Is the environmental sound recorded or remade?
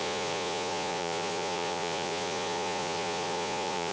remade